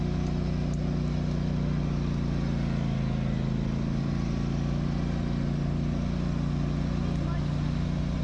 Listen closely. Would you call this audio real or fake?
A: real